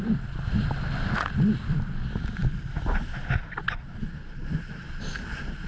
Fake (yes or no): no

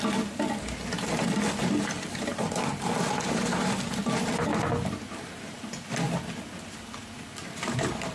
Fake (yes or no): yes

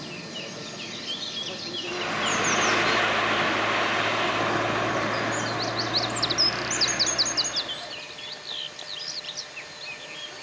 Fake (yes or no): no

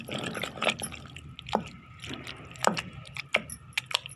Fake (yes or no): no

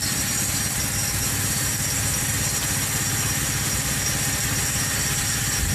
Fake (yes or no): no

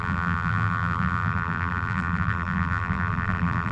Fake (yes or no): yes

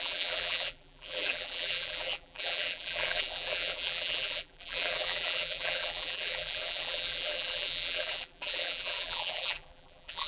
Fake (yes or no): yes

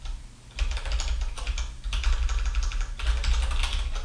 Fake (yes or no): no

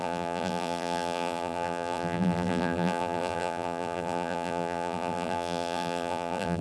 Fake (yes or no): yes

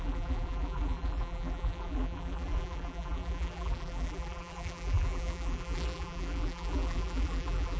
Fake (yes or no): yes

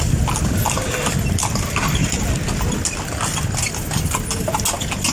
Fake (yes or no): no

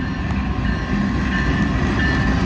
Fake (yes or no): no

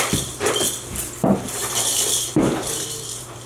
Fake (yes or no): yes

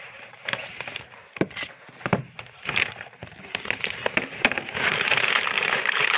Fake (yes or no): yes